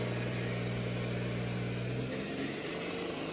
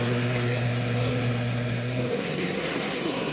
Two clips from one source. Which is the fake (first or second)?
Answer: second